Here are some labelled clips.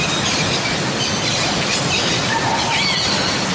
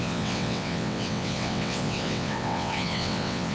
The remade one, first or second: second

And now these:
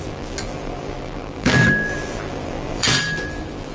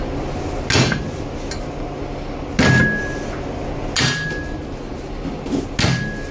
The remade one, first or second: first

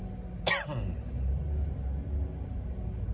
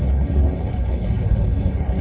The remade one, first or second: second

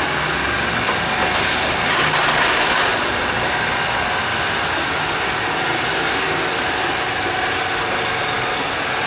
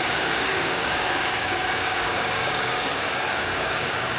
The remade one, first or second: second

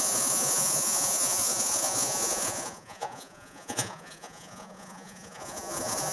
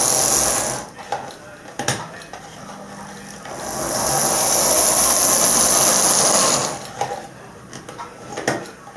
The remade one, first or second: first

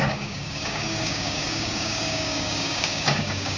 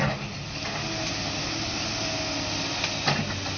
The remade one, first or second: first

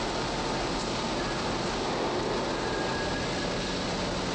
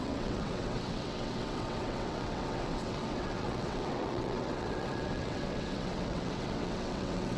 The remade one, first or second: second